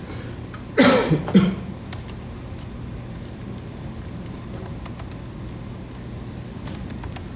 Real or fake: real